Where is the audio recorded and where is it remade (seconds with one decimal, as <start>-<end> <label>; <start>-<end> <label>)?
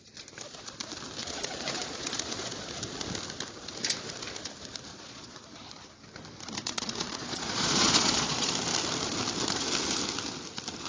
0.0-1.2 recorded; 1.2-2.8 remade; 2.8-4.9 recorded; 4.9-5.5 remade; 5.5-6.6 recorded; 6.6-8.5 remade; 8.5-10.9 recorded